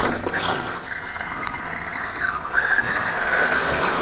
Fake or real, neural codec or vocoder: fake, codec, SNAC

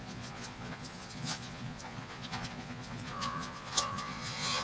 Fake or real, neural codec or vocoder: fake, vocoder, Vocos